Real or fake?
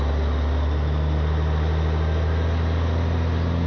real